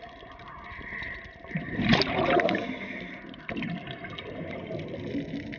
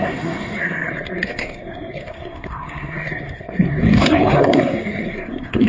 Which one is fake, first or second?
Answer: second